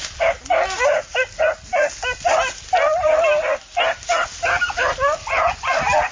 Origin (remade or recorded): recorded